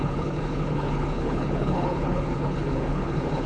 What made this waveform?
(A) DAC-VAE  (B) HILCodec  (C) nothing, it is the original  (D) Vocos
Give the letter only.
B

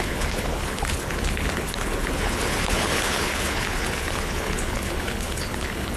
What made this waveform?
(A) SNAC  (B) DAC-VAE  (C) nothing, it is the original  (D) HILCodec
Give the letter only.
D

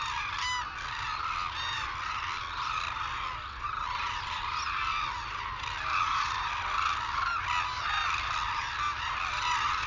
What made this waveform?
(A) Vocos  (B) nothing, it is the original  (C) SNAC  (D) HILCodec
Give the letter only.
B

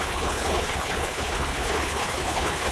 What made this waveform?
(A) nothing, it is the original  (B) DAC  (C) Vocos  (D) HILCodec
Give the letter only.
D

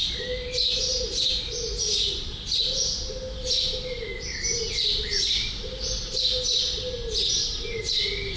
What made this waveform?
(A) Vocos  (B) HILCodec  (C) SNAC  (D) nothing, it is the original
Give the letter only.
D